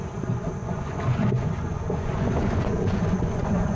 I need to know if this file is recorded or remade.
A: remade